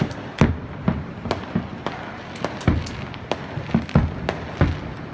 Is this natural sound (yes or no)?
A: yes